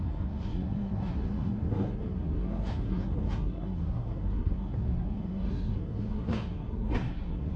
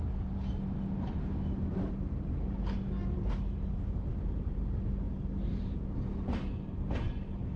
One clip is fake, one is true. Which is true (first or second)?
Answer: second